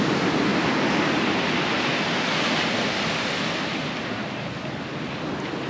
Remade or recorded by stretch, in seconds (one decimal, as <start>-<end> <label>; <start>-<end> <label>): 0.0-5.7 recorded